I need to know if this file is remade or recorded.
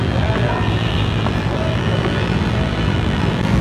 remade